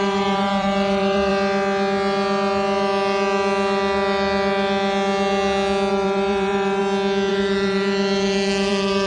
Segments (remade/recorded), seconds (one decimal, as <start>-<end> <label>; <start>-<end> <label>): 0.0-1.3 remade; 1.3-5.9 recorded; 5.9-6.8 remade; 6.8-7.3 recorded; 7.3-9.1 remade